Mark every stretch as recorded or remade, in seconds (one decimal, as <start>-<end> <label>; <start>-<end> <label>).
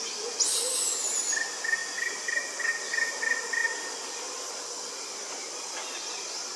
0.0-6.6 recorded